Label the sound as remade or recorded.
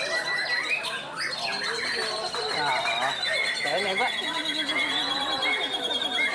recorded